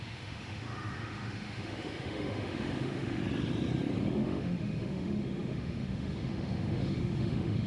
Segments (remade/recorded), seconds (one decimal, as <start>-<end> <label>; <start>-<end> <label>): 0.0-3.2 remade; 3.2-4.0 recorded; 4.0-7.7 remade